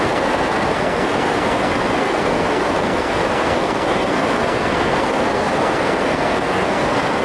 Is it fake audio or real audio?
fake